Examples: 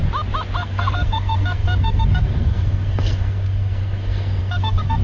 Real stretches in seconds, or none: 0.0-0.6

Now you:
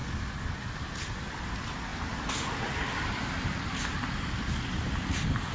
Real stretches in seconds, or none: 0.0-5.5

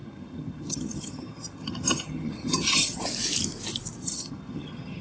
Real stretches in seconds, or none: 3.0-4.0

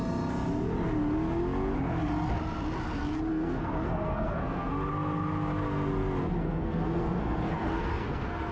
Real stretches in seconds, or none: 0.0-3.3; 4.7-6.4

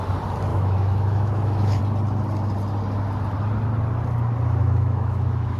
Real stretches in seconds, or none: 0.0-0.5; 1.8-4.6

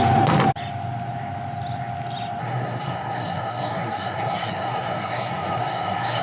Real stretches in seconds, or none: 0.0-2.4

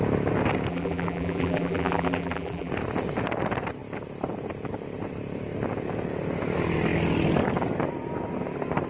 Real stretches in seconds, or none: 0.0-0.7; 2.7-8.9

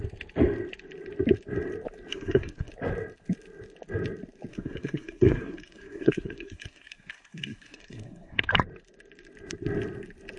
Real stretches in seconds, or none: 0.0-2.1; 2.7-4.5; 8.5-10.4